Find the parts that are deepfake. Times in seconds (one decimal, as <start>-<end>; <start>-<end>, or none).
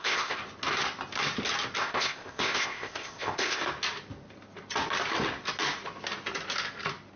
0.0-0.4; 1.8-3.6